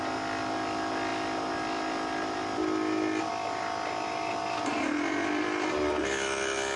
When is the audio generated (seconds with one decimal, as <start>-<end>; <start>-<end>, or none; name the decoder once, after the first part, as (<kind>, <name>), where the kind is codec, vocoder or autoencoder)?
none